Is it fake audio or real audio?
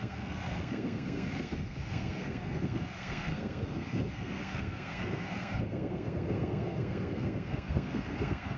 fake